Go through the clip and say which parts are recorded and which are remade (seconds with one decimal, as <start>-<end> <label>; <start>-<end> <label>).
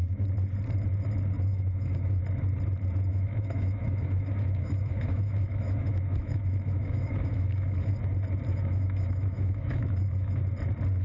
0.0-1.5 recorded; 1.5-2.2 remade; 2.2-3.1 recorded; 3.1-7.9 remade; 7.9-8.5 recorded; 8.5-10.4 remade; 10.4-11.0 recorded